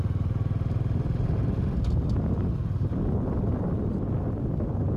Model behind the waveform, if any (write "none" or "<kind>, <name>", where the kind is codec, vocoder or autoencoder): none